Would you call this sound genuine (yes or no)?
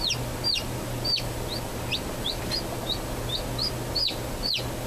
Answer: yes